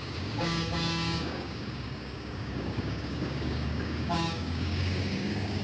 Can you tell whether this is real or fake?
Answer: fake